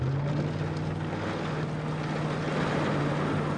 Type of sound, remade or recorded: recorded